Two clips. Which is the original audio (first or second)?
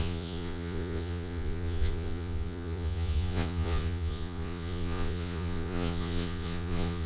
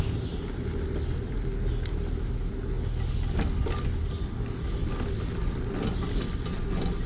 second